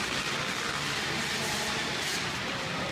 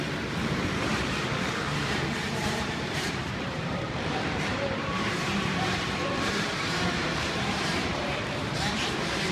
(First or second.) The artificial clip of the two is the second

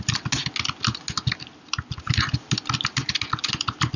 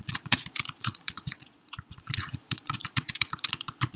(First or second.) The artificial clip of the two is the second